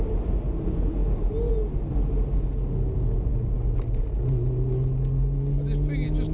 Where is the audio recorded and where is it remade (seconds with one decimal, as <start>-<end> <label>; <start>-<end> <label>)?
0.0-6.3 recorded